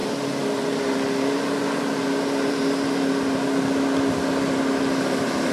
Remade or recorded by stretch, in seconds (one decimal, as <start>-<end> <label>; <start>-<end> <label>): 0.0-5.5 recorded